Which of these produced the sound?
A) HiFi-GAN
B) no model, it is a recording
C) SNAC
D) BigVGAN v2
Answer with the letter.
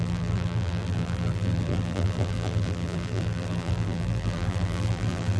D